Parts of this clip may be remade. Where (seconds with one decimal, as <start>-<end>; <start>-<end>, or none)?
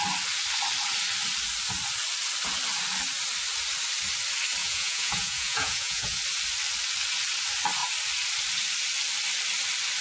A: 4.6-6.2